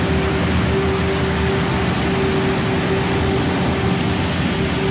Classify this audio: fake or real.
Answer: real